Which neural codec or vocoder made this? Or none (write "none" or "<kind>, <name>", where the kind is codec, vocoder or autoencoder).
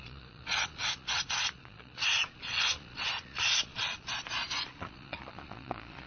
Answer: vocoder, Vocos